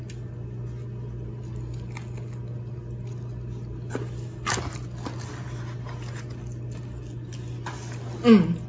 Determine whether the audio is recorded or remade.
recorded